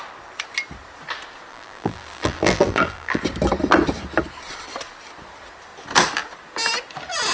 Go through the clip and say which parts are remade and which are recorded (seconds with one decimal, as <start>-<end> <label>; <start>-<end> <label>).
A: 0.0-1.5 recorded; 1.5-3.2 remade; 3.2-7.3 recorded